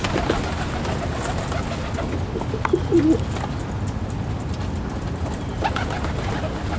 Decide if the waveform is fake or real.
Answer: real